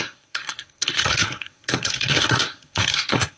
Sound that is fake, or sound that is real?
fake